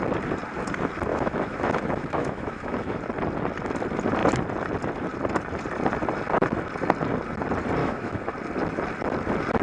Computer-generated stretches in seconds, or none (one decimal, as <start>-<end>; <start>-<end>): 1.1-3.0; 7.8-8.3